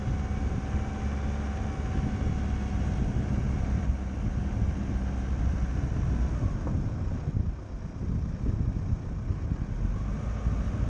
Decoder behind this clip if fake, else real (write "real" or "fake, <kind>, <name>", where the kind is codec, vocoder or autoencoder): real